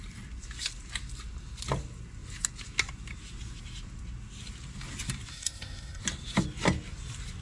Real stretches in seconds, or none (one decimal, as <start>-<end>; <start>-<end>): 0.0-5.3; 6.0-7.4